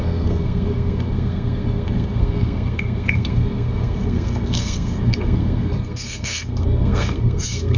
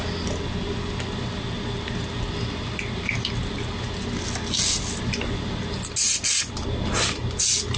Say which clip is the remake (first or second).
first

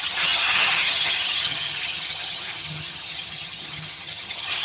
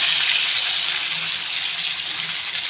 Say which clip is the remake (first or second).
first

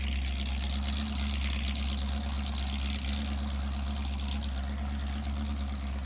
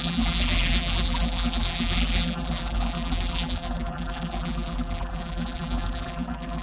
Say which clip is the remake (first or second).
second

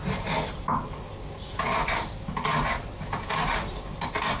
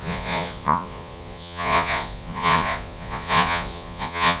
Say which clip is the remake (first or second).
second